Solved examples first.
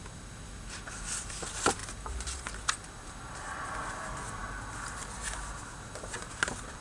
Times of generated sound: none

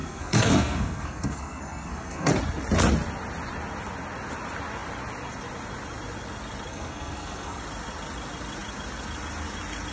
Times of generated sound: 0.0-2.3 (codec, SNAC); 6.7-7.6